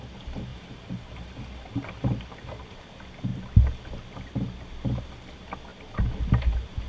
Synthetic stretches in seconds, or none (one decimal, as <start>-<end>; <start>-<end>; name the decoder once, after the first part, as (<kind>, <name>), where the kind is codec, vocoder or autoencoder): 0.5-2.9 (vocoder, BigVGAN v2)